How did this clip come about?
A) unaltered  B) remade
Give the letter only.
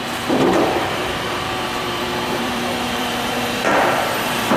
B